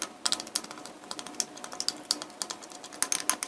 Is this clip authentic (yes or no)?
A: yes